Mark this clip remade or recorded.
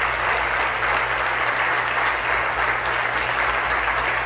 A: recorded